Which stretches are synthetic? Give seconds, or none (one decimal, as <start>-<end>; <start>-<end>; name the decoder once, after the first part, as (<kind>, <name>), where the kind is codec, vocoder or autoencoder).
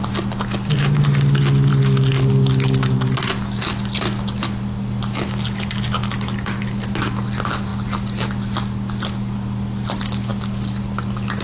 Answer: none